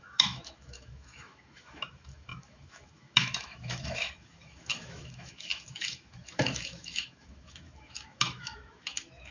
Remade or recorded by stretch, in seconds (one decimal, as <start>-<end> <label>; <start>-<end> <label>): 0.0-9.3 remade